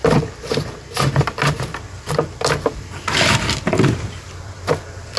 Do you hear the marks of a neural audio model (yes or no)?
yes